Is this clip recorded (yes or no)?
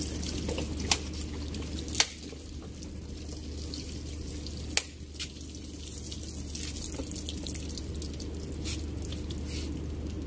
yes